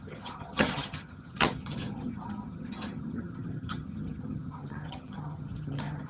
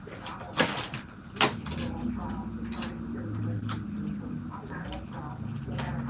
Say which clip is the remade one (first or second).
first